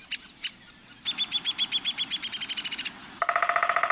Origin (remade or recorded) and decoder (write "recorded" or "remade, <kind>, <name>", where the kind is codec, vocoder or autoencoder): recorded